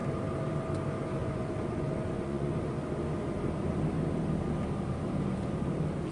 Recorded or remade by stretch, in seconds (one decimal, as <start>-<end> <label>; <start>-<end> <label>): 0.0-1.2 recorded; 1.2-2.5 remade; 2.5-6.1 recorded